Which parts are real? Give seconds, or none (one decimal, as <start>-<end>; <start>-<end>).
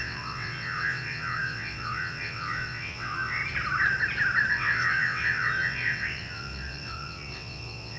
3.4-4.5